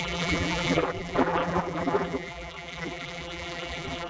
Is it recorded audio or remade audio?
remade